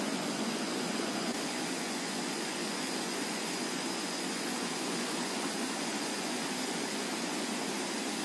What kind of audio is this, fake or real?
fake